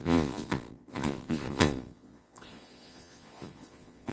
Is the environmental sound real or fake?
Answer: fake